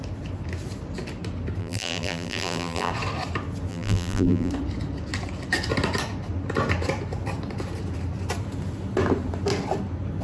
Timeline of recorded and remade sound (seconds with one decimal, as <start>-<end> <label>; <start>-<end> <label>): 0.0-1.6 recorded; 1.6-2.9 remade; 2.9-3.7 recorded; 3.7-4.5 remade; 4.5-10.2 recorded